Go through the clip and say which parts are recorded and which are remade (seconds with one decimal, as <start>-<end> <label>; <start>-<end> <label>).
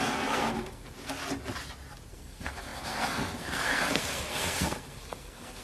0.0-1.2 remade; 1.2-2.1 recorded; 2.1-5.6 remade